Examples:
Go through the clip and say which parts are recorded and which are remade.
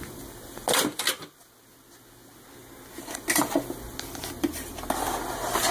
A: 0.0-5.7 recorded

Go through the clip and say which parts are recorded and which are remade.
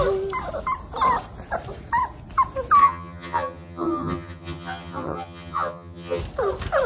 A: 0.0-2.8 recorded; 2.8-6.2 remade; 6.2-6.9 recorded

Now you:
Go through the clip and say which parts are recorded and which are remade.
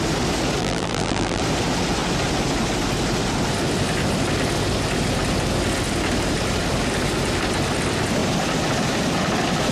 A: 0.0-0.6 recorded; 0.6-1.4 remade; 1.4-9.7 recorded